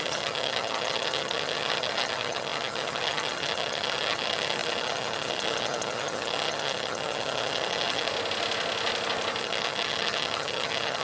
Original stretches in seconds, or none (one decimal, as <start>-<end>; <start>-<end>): 8.1-9.4